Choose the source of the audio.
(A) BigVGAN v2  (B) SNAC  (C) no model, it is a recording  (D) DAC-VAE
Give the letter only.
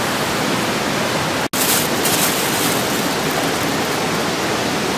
C